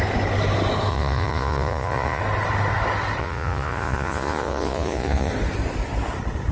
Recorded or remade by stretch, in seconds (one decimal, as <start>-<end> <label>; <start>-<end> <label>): 0.0-0.9 recorded; 0.9-2.2 remade; 2.2-3.2 recorded; 3.2-5.3 remade; 5.3-6.5 recorded